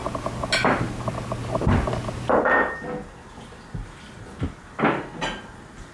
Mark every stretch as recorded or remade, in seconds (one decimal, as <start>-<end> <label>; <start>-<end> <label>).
0.0-5.9 recorded